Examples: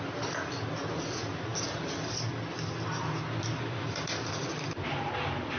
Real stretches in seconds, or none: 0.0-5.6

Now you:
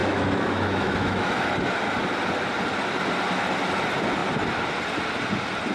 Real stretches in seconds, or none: 1.4-5.7

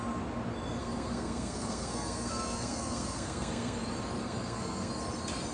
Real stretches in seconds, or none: 0.0-0.8; 3.8-4.2; 4.9-5.5